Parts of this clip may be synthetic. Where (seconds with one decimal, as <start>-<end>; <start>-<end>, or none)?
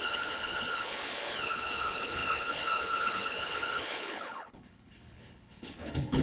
0.0-6.2